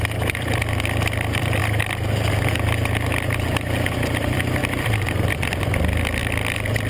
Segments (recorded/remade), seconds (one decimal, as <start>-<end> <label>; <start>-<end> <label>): 0.0-1.6 remade; 1.6-2.3 recorded; 2.3-6.2 remade; 6.2-6.9 recorded